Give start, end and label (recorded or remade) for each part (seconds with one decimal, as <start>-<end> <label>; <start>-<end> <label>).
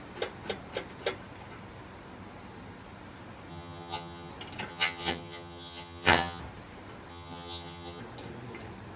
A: 0.0-3.5 recorded; 3.5-4.3 remade; 4.3-4.7 recorded; 4.7-6.4 remade; 6.4-7.1 recorded; 7.1-8.0 remade; 8.0-9.0 recorded